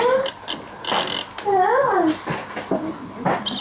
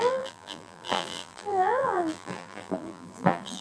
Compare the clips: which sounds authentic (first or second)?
first